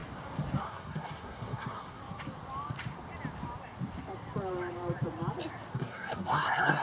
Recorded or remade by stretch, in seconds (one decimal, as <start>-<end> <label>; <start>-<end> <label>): 0.0-0.6 recorded; 0.6-2.0 remade; 2.0-5.7 recorded; 5.7-6.8 remade